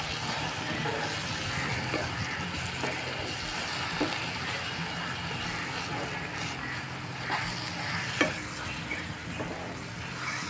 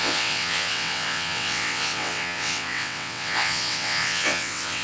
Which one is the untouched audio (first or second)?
first